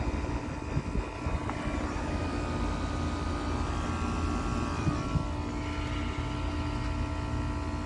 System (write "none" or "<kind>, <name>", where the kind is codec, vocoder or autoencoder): none